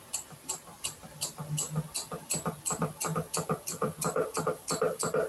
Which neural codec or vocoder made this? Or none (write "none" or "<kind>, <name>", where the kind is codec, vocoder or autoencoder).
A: none